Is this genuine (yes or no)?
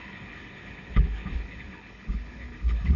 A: no